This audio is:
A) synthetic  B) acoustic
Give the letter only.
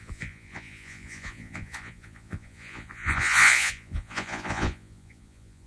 A